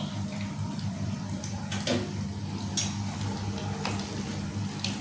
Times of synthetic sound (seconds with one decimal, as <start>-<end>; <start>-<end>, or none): 0.0-1.9